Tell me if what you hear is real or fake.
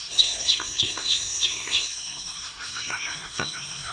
fake